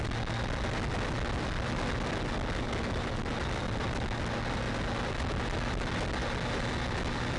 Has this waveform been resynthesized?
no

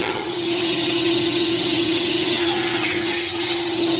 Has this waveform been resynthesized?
yes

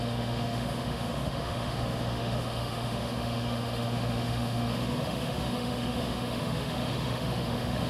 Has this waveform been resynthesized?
yes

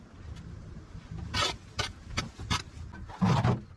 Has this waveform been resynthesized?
no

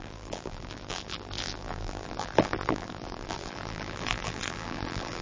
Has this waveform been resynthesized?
yes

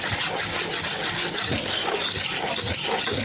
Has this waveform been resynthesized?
no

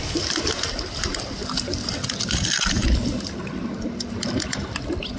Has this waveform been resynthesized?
no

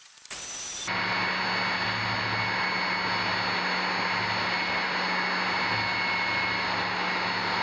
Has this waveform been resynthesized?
no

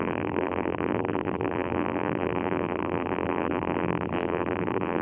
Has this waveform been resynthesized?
yes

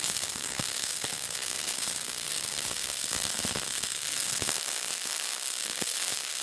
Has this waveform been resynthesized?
yes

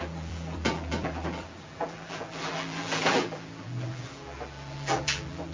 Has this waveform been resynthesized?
yes